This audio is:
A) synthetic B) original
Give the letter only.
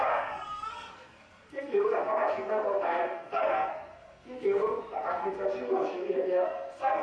A